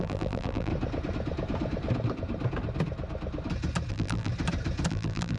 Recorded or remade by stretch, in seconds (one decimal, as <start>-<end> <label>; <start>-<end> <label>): 0.0-0.7 remade; 0.7-3.9 recorded; 3.9-4.3 remade; 4.3-4.9 recorded; 4.9-5.4 remade